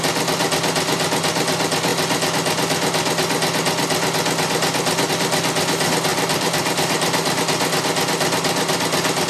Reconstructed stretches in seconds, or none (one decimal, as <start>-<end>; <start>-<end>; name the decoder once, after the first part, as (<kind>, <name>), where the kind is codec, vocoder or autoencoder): 6.1-7.4 (vocoder, BigVGAN v2)